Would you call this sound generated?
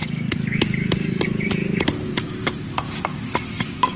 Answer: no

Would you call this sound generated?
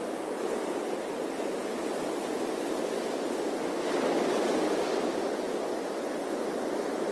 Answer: no